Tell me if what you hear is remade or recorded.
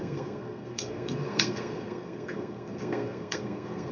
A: remade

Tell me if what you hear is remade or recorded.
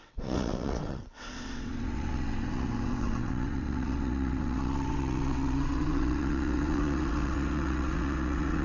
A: remade